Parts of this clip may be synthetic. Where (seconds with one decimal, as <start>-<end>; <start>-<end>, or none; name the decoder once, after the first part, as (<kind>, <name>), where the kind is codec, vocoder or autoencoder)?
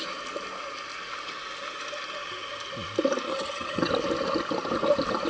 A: 3.3-3.9 (vocoder, HiFi-GAN)